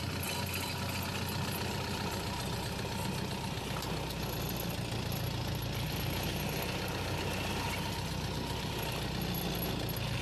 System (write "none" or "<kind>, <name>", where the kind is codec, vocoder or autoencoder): none